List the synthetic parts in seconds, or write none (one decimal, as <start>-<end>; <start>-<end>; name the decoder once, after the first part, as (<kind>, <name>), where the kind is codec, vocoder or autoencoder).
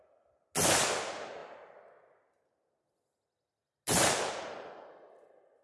none